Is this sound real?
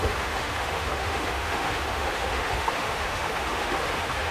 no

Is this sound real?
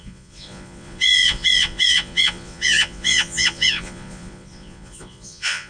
no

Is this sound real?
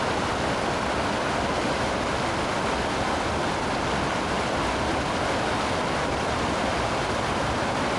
yes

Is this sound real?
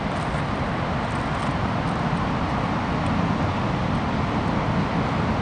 yes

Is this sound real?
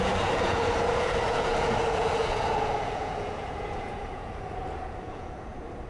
no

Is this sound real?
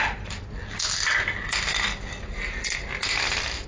yes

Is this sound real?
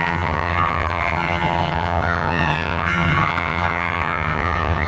no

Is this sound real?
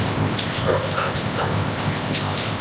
no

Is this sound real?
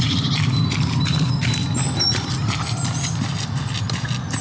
yes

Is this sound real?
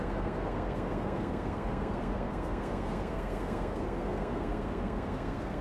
no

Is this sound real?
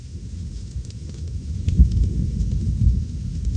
no